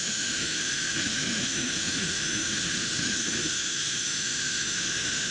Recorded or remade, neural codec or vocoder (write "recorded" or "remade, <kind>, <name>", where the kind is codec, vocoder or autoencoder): remade, autoencoder, DAC-VAE